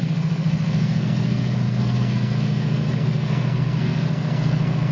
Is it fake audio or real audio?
fake